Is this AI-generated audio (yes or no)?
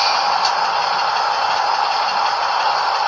no